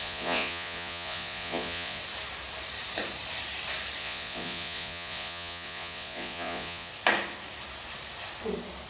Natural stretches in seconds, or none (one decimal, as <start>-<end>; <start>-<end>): 2.0-4.0; 6.9-8.9